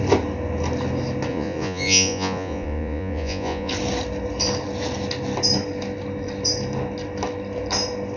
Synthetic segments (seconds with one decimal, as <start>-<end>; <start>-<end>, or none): 1.3-3.7